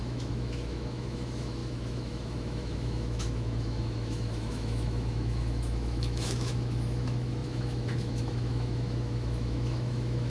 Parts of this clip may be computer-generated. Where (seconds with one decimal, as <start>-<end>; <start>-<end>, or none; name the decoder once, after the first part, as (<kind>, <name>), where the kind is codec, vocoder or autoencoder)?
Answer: 0.0-10.3 (autoencoder, DAC-VAE)